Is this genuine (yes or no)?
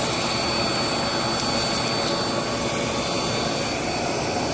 yes